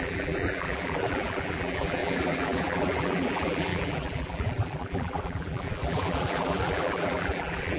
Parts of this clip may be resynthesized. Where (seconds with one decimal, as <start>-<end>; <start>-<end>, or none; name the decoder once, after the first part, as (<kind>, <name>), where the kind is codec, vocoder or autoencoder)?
0.0-7.8 (vocoder, BigVGAN v2)